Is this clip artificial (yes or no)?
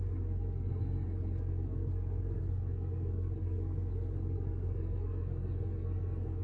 yes